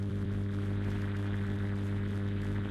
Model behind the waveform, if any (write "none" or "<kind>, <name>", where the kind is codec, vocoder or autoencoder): vocoder, BigVGAN v2